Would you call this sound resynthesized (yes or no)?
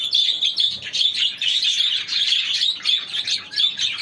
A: yes